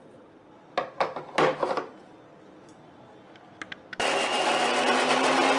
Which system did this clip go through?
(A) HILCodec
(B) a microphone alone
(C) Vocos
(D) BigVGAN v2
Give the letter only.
B